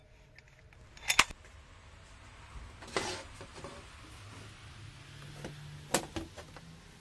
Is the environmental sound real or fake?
real